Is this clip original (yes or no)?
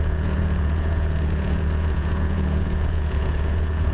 no